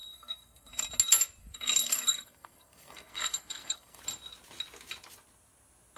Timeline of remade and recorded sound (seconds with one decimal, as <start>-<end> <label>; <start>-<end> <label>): 0.0-0.8 remade; 0.8-1.4 recorded; 1.4-4.0 remade; 4.0-6.0 recorded